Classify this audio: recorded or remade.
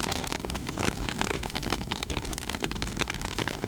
remade